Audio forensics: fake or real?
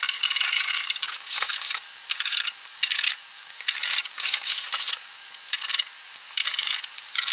fake